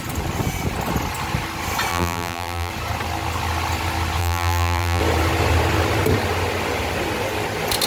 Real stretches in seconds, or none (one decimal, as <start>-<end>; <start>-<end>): 0.0-1.9; 2.7-4.2; 5.0-7.9